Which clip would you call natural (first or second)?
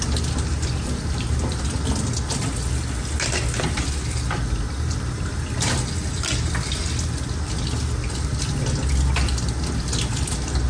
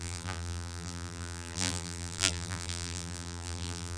first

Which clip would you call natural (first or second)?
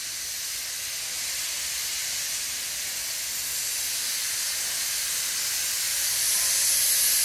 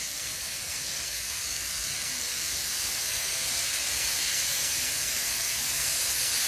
first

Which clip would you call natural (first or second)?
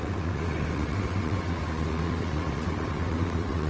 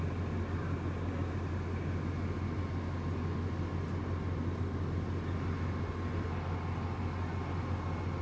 second